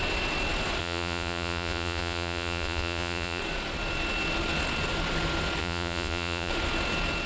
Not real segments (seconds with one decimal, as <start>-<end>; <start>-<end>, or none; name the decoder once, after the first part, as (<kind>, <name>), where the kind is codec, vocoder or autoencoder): 0.8-3.4 (vocoder, Vocos); 5.6-6.5